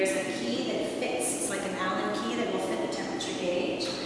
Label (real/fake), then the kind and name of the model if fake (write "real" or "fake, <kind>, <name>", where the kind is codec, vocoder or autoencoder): real